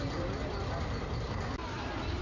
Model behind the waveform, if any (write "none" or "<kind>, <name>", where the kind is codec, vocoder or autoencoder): none